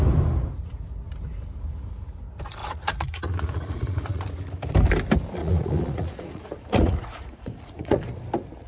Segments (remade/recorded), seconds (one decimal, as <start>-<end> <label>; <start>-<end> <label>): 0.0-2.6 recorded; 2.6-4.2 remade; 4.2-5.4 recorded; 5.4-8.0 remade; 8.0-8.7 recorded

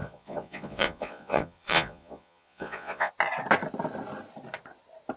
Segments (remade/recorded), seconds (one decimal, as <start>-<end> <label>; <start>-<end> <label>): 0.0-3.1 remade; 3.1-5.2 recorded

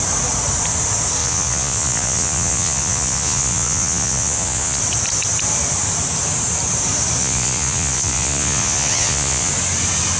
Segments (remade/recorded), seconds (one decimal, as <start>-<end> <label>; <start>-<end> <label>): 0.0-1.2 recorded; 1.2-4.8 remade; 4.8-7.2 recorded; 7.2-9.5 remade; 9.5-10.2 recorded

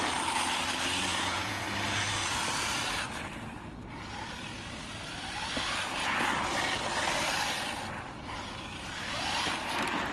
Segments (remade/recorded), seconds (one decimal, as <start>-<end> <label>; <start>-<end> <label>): 0.0-1.1 recorded; 1.1-1.6 remade; 1.6-10.1 recorded

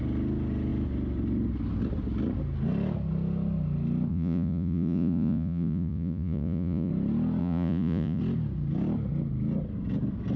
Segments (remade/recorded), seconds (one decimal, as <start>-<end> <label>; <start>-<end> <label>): 0.0-4.1 recorded; 4.1-6.9 remade; 6.9-7.4 recorded; 7.4-8.2 remade; 8.2-10.4 recorded

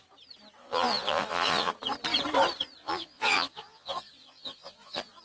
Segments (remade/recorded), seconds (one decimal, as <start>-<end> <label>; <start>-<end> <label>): 0.0-0.6 recorded; 0.6-1.7 remade; 1.7-2.8 recorded; 2.8-5.2 remade